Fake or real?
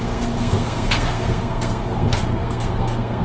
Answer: fake